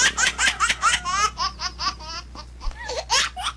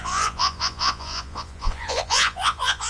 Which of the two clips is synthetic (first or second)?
second